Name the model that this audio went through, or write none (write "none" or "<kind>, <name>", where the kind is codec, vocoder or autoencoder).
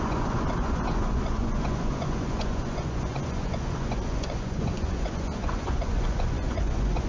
vocoder, Vocos